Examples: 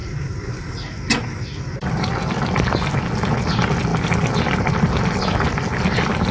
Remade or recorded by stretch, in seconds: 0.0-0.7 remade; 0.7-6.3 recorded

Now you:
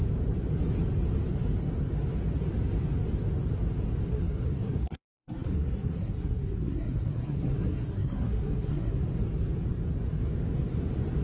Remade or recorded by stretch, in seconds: 0.0-4.1 recorded; 4.1-8.9 remade; 8.9-11.2 recorded

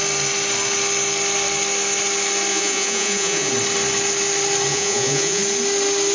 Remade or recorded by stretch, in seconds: 0.0-2.5 recorded; 2.5-3.5 remade; 3.5-4.7 recorded; 4.7-5.4 remade; 5.4-6.1 recorded

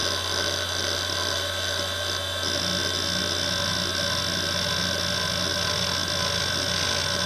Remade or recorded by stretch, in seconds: 0.0-7.3 recorded

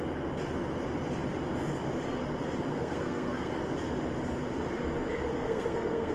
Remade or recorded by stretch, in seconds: 0.0-2.7 recorded; 2.7-3.5 remade; 3.5-5.3 recorded; 5.3-6.1 remade

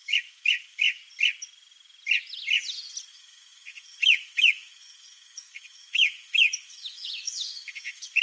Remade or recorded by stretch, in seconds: 0.0-1.0 remade; 1.0-3.1 recorded; 3.1-8.2 remade

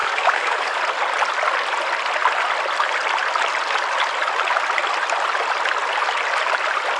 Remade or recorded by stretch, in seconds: 0.0-0.8 remade; 0.8-7.0 recorded